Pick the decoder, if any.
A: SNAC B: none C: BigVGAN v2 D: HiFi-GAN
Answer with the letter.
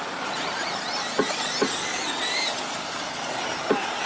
B